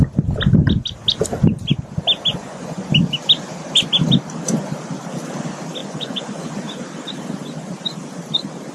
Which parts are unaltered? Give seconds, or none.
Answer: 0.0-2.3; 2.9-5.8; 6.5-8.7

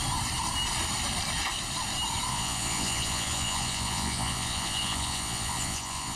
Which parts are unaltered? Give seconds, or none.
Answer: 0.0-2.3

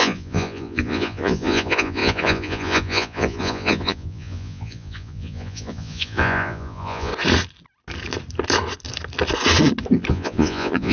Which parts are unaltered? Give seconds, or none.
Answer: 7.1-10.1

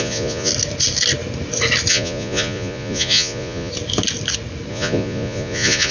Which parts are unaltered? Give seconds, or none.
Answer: 0.5-1.9; 3.7-4.7

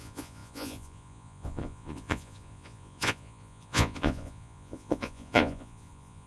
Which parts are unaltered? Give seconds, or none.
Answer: none

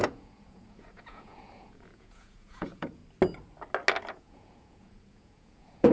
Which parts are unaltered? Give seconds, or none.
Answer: 3.0-4.1